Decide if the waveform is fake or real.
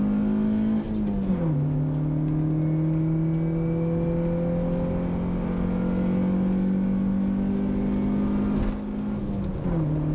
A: real